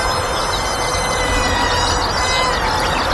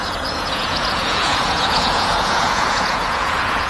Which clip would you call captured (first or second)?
first